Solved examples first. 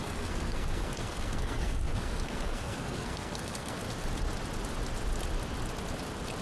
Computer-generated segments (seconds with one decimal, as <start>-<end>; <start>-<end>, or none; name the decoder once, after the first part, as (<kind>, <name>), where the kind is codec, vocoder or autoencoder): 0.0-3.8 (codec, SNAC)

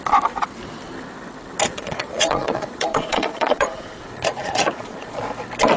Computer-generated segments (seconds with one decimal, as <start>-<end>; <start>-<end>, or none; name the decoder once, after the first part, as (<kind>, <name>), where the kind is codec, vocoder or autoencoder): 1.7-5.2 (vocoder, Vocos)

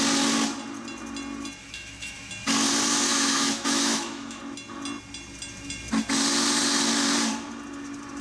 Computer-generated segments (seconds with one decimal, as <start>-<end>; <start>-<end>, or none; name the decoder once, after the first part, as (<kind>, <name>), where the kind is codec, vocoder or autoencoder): 1.6-2.3 (autoencoder, DAC-VAE); 3.1-4.4

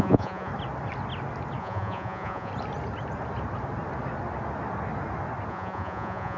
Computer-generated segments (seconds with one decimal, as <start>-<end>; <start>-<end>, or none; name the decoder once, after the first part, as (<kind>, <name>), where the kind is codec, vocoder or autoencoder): 0.0-0.5 (vocoder, Vocos); 1.6-2.5; 5.5-6.4